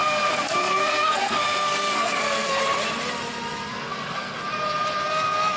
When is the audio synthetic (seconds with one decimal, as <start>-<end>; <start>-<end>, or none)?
0.0-2.6; 3.7-4.4